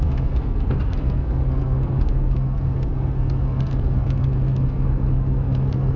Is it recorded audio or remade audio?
remade